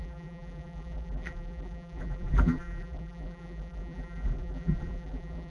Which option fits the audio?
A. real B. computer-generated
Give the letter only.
B